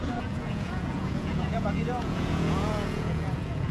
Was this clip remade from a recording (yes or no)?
yes